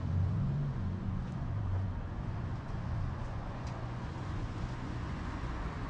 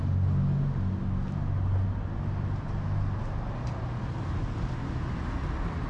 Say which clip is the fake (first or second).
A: first